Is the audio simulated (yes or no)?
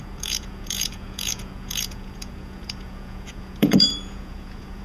yes